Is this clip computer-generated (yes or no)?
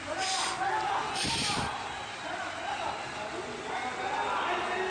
no